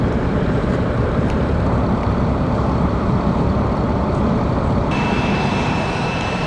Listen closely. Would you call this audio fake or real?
fake